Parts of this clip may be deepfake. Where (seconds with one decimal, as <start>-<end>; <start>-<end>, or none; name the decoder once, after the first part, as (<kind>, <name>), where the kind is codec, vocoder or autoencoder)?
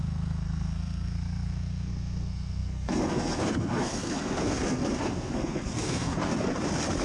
0.0-6.2 (codec, SNAC)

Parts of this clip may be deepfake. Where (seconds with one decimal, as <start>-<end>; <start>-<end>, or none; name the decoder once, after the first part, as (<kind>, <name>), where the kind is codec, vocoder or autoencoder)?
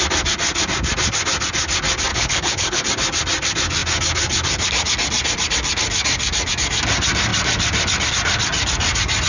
2.1-2.8 (codec, HILCodec)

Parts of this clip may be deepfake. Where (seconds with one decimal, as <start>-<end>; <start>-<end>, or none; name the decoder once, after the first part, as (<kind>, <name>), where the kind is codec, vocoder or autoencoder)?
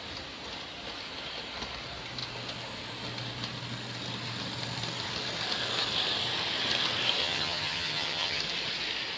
7.2-8.4 (vocoder, HiFi-GAN)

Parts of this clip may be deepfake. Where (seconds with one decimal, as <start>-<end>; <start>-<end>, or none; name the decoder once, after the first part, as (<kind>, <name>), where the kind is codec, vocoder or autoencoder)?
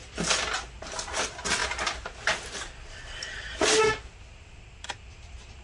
none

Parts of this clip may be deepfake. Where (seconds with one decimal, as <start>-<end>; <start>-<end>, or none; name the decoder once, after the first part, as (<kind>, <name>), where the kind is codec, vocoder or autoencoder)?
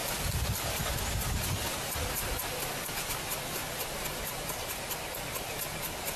0.0-0.8 (vocoder, BigVGAN v2)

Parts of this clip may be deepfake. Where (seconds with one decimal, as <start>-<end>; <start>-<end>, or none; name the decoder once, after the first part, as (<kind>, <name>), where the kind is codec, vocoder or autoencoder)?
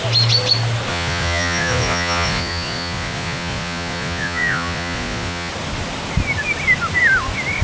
0.9-5.5 (vocoder, Vocos)